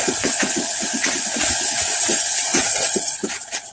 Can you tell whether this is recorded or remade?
remade